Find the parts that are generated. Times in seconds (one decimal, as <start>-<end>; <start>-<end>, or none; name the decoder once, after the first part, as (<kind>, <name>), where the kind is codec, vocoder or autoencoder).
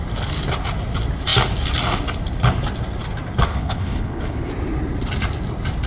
3.5-4.5 (codec, HILCodec)